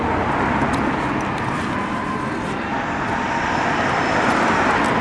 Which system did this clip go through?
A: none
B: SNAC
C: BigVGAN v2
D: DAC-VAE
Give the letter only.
A